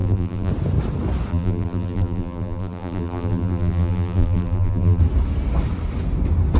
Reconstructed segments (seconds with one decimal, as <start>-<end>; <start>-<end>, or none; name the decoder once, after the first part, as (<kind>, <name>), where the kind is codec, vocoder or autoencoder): 0.0-0.5 (vocoder, BigVGAN v2); 1.3-5.0